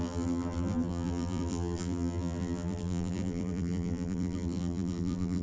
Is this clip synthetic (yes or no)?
yes